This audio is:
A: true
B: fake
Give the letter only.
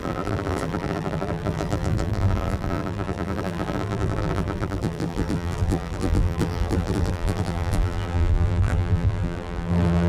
B